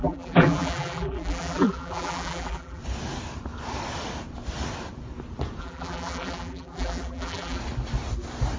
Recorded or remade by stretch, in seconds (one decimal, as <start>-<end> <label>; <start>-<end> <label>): 0.0-2.8 remade; 2.8-5.6 recorded; 5.6-7.6 remade; 7.6-8.6 recorded